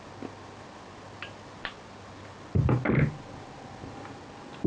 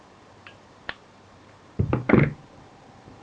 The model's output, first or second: second